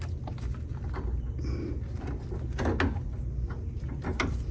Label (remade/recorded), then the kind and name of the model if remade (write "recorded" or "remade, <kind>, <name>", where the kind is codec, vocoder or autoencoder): recorded